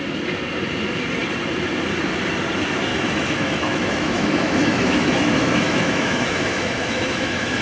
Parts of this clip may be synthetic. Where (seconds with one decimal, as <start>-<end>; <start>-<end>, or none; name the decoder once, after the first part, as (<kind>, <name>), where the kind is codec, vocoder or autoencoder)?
2.9-7.6 (autoencoder, DAC-VAE)